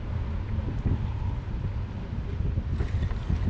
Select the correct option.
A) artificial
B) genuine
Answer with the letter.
B